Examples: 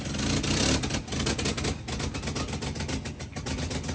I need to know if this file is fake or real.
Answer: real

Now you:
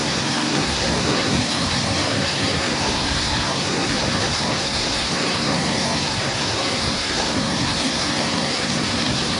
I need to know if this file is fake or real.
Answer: fake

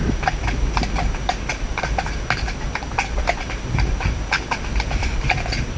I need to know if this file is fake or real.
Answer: real